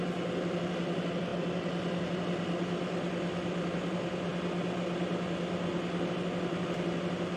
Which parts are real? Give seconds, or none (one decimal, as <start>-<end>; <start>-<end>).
0.0-7.4